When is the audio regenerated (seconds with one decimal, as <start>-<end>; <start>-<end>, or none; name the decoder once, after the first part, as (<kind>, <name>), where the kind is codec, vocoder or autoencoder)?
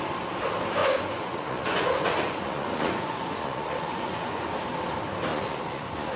0.8-4.5 (vocoder, Vocos); 5.3-6.2